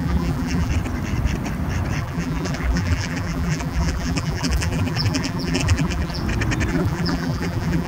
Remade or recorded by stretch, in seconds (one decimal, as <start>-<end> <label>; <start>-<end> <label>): 0.0-0.7 remade; 0.7-2.0 recorded; 2.0-6.2 remade; 6.2-6.7 recorded; 6.7-7.9 remade